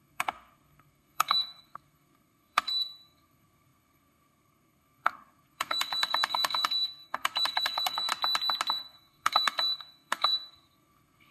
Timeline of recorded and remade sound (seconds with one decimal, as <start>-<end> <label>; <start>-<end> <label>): 0.0-8.1 remade; 8.1-8.7 recorded; 8.7-11.3 remade